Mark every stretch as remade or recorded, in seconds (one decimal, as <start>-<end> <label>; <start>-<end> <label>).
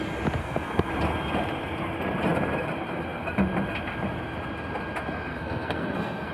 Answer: 0.0-0.4 recorded; 0.4-0.9 remade; 0.9-5.3 recorded; 5.3-6.3 remade